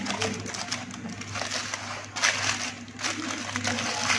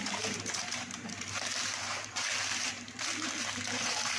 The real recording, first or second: first